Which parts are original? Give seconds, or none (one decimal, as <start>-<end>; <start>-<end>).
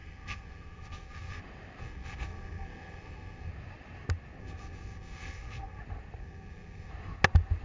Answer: 1.4-1.8; 3.5-4.4; 5.8-6.2; 6.9-7.6